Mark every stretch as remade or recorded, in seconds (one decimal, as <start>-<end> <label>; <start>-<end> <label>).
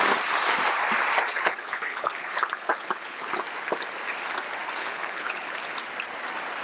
0.0-1.3 recorded; 1.3-3.3 remade; 3.3-4.8 recorded; 4.8-5.7 remade; 5.7-6.6 recorded